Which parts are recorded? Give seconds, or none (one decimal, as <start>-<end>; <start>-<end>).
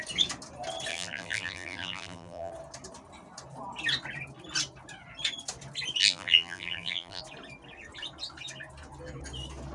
0.0-0.9; 2.5-6.0; 7.2-9.7